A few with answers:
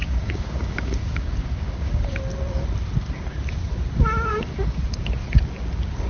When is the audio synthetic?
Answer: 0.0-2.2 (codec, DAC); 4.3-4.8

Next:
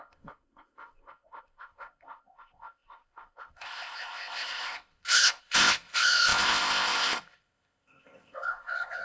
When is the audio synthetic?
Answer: 0.0-9.0 (codec, ZipCodec)

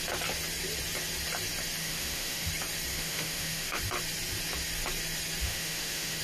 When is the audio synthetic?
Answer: 1.8-2.5 (autoencoder, DAC-VAE); 2.9-3.8; 5.4-6.2

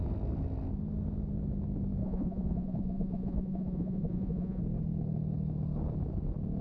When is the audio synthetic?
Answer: 2.0-4.6 (vocoder, Vocos)

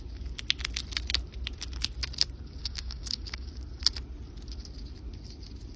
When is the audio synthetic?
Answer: 2.6-3.5 (codec, DAC)